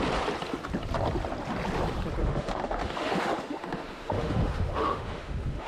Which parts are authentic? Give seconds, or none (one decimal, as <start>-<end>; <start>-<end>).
0.0-2.2